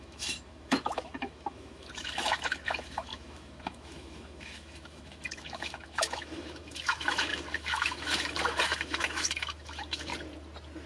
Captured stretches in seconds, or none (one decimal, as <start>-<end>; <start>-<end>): 10.1-10.9